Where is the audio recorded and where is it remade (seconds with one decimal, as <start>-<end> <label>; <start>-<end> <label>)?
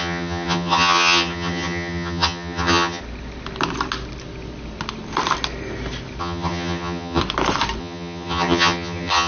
0.0-3.0 remade; 3.0-6.2 recorded; 6.2-7.2 remade; 7.2-7.8 recorded; 7.8-9.3 remade